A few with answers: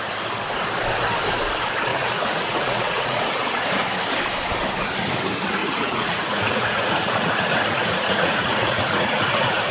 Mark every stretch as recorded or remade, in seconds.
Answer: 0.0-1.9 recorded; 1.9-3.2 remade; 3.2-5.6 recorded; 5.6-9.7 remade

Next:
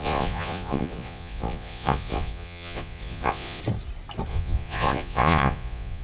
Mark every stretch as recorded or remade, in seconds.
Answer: 0.0-3.6 remade; 3.6-4.3 recorded; 4.3-6.0 remade

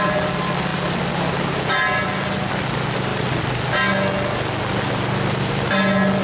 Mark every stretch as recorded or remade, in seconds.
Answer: 0.0-6.2 recorded

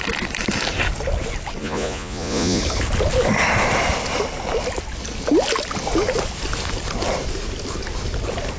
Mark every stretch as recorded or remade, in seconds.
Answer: 0.0-1.6 recorded; 1.6-2.6 remade; 2.6-8.6 recorded